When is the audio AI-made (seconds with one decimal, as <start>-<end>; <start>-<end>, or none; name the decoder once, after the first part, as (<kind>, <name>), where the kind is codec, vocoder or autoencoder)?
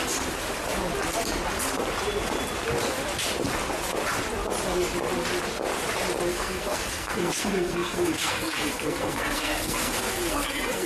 6.3-10.9 (codec, SNAC)